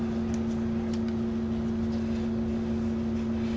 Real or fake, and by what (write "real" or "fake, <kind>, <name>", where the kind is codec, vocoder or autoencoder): real